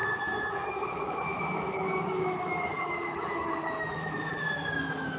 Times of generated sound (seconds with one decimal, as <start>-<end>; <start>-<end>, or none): 0.0-5.2